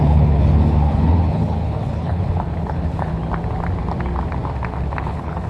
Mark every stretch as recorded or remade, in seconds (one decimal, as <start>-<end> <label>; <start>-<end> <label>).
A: 0.0-3.1 remade; 3.1-5.0 recorded; 5.0-5.5 remade